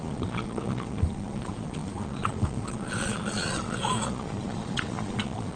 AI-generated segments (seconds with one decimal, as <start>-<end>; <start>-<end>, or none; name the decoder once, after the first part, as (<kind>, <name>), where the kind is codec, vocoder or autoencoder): 0.0-5.6 (vocoder, Vocos)